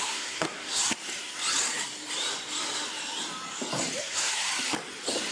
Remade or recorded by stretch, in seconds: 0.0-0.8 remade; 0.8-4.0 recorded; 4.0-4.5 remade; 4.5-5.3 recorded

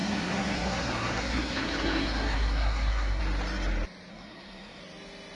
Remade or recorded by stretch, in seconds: 0.0-3.2 remade; 3.2-4.1 recorded; 4.1-4.8 remade; 4.8-5.4 recorded

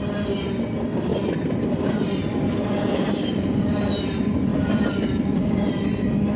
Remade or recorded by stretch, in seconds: 0.0-1.1 recorded; 1.1-3.7 remade; 3.7-4.5 recorded; 4.5-5.6 remade; 5.6-6.4 recorded

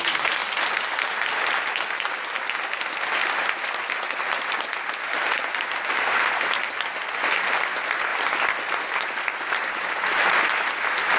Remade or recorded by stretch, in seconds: 0.0-11.2 recorded

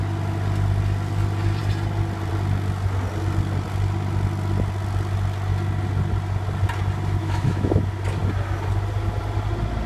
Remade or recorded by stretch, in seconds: 0.0-7.2 recorded; 7.2-7.8 remade; 7.8-9.9 recorded